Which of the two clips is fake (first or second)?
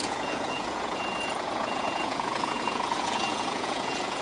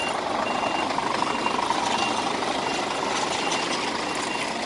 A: first